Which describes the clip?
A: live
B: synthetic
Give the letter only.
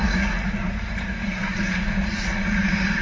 B